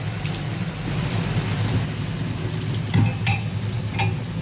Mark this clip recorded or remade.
recorded